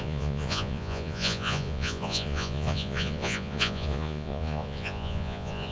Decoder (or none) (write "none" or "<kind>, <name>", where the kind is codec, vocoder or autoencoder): vocoder, Vocos